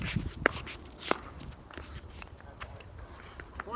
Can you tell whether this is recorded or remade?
recorded